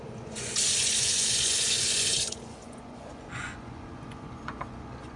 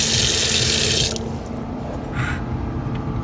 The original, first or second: second